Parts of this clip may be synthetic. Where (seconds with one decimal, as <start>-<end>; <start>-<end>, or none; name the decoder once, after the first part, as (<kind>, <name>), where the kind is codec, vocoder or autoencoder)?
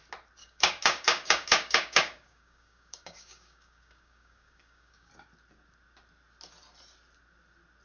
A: 0.4-5.1 (codec, DAC)